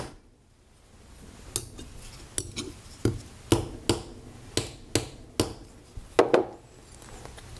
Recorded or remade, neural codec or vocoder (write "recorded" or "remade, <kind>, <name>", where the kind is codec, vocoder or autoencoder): recorded